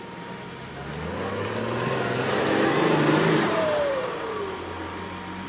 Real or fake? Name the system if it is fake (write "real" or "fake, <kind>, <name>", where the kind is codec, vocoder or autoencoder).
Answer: real